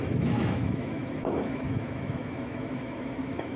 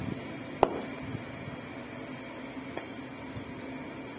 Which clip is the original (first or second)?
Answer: second